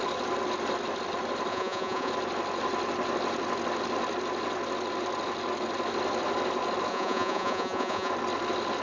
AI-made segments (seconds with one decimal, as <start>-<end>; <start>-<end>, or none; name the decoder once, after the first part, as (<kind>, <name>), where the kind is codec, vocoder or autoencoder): 1.5-2.1 (vocoder, Vocos); 6.9-8.1